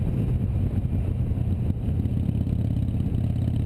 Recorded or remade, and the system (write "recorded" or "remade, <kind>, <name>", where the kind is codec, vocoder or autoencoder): recorded